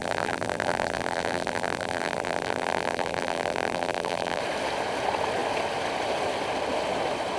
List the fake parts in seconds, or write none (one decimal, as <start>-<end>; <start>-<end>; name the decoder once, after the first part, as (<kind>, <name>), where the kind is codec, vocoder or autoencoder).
0.0-4.4 (vocoder, BigVGAN v2)